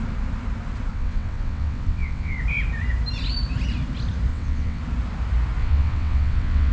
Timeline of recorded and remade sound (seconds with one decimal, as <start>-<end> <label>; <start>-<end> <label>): 0.0-0.9 recorded; 0.9-2.4 remade; 2.4-4.3 recorded; 4.3-4.8 remade; 4.8-5.6 recorded; 5.6-6.7 remade